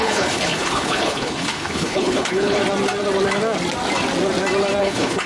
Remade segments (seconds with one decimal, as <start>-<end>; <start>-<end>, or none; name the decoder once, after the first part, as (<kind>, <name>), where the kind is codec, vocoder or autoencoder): 0.0-2.6 (codec, HILCodec); 4.8-5.3